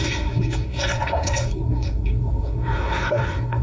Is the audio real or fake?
fake